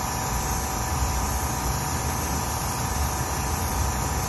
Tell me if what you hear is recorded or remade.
remade